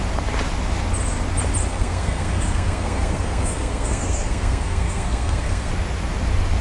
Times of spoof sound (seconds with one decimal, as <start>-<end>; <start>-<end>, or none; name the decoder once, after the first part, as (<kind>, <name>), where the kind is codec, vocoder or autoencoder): 1.7-5.7 (codec, SNAC)